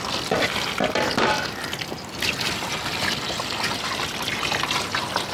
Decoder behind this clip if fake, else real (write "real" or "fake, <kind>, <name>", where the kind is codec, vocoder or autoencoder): real